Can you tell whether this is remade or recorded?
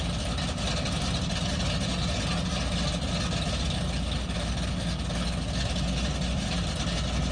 recorded